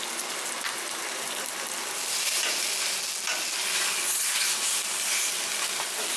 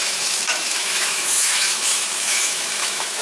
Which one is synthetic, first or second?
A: second